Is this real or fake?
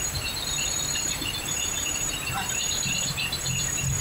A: fake